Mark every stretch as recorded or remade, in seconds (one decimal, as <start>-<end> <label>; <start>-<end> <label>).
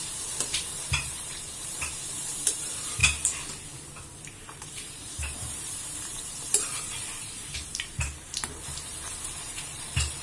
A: 0.0-3.0 remade; 3.0-4.4 recorded; 4.4-10.2 remade